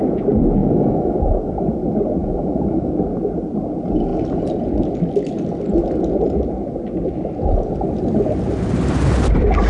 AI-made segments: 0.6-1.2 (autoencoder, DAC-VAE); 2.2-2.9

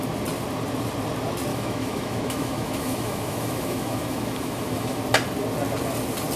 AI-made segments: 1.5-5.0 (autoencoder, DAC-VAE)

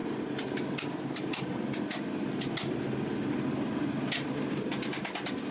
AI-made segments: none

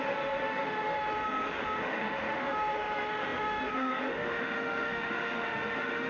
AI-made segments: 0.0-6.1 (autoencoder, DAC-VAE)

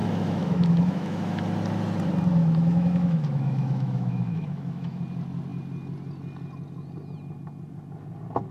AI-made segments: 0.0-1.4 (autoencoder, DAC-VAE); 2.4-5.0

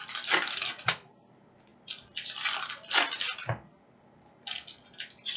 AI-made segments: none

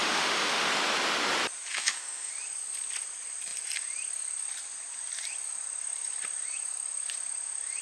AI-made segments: 0.0-0.7 (autoencoder, DAC-VAE); 1.7-2.3

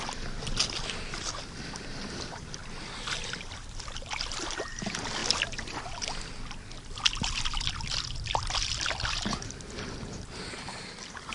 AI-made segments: none